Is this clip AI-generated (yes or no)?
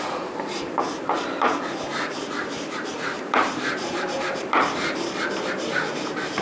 yes